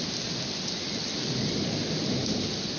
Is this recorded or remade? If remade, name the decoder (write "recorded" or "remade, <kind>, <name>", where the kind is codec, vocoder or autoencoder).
recorded